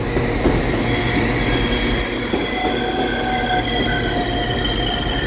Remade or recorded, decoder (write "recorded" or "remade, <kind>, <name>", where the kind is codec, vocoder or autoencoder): recorded